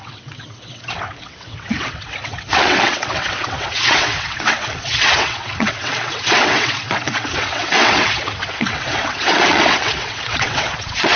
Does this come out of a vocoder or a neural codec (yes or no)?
yes